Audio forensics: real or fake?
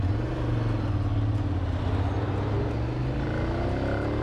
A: real